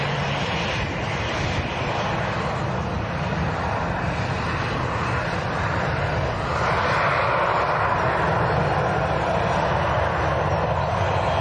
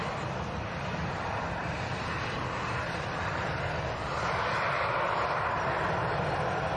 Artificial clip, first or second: second